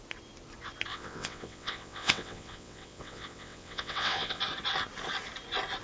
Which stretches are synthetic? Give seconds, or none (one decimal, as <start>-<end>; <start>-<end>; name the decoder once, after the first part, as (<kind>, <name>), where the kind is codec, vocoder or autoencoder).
0.9-4.4 (vocoder, WaveNeXt)